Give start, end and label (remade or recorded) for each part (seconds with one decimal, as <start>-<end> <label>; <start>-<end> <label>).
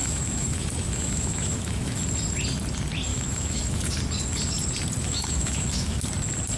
0.0-2.0 remade; 2.0-3.1 recorded; 3.1-3.8 remade; 3.8-5.0 recorded; 5.0-6.0 remade; 6.0-6.6 recorded